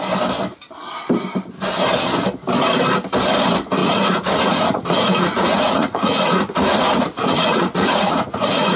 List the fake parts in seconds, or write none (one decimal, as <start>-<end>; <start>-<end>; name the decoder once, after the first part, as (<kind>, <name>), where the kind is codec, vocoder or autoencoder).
3.8-8.8 (vocoder, Vocos)